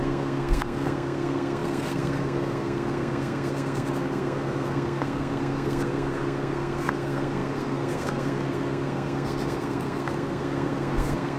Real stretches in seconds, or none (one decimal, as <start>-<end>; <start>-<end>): none